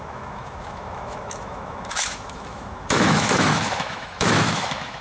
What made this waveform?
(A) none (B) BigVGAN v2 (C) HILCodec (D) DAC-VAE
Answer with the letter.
D